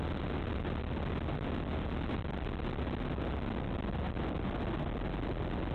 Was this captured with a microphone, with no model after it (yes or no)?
yes